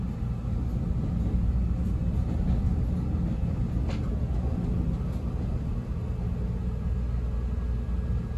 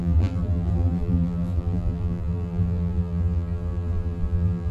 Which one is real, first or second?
first